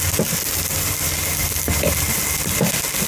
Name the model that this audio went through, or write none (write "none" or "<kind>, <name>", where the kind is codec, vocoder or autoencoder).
none